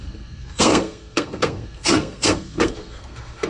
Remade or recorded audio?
remade